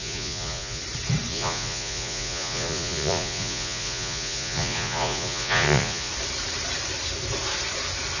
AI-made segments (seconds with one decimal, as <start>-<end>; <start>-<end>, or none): 0.0-0.8; 1.3-6.1